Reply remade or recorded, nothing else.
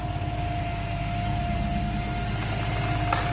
recorded